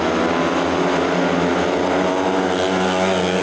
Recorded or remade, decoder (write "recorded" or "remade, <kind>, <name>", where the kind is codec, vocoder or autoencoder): recorded